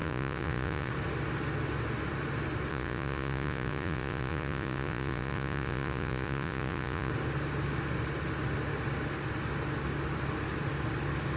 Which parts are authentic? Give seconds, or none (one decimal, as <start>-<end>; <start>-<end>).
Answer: 0.9-2.7; 7.1-11.4